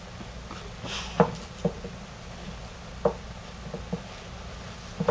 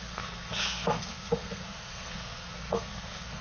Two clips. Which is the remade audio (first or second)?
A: second